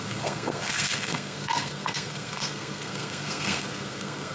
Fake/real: fake